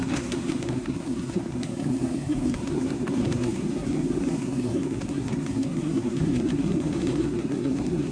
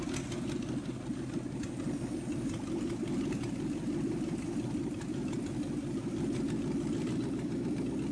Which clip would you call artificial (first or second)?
first